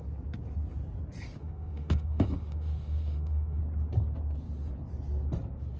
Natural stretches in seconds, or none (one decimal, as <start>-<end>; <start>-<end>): 0.0-1.4; 3.6-5.8